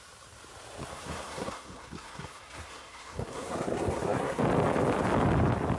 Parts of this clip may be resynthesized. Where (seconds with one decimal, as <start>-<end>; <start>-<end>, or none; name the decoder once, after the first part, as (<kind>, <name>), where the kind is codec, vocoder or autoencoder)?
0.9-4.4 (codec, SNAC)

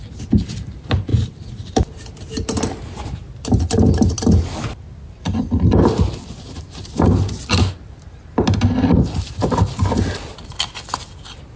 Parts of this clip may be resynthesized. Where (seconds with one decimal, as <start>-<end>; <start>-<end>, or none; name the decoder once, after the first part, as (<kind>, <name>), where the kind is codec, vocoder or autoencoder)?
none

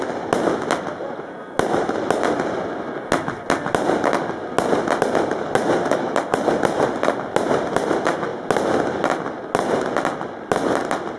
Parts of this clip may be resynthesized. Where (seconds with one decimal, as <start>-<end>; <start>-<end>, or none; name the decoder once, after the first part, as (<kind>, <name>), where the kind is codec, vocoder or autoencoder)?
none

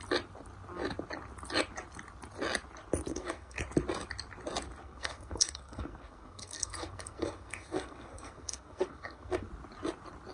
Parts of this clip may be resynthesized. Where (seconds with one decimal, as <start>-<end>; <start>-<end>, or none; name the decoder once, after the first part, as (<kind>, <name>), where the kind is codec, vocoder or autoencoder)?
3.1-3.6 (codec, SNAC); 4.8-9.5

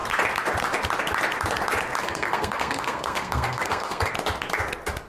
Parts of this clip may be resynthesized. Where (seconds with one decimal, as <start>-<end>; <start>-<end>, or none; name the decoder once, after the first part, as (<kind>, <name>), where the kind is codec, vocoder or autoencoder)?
2.0-4.1 (codec, SNAC)